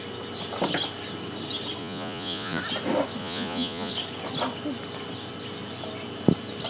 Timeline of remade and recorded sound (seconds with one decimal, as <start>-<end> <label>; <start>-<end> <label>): 0.0-1.8 recorded; 1.8-2.6 remade; 2.6-3.2 recorded; 3.2-3.9 remade; 3.9-6.7 recorded